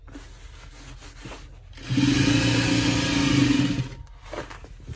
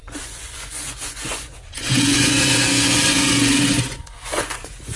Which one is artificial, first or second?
second